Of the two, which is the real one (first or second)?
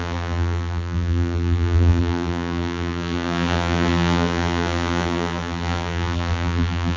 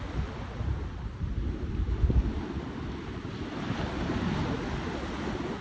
second